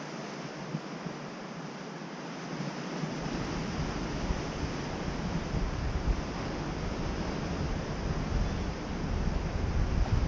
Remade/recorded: recorded